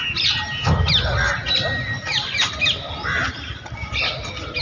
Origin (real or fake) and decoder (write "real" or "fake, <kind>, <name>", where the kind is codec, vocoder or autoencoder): real